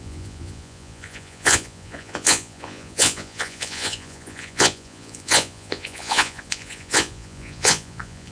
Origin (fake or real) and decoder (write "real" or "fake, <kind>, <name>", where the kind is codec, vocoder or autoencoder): fake, vocoder, Vocos